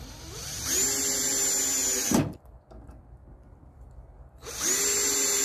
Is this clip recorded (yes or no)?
yes